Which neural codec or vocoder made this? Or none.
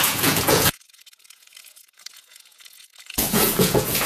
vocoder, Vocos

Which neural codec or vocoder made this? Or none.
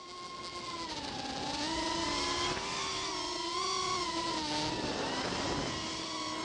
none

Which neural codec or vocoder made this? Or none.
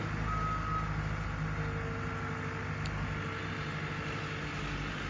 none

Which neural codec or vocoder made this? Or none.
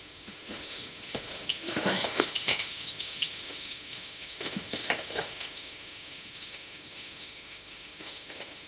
autoencoder, DAC-VAE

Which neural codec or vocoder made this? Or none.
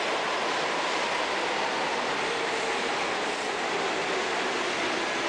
none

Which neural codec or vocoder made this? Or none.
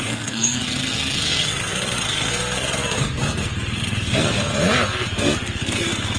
codec, SNAC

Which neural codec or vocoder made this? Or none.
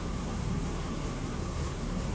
codec, SNAC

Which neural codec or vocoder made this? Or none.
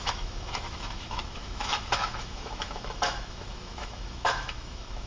autoencoder, DAC-VAE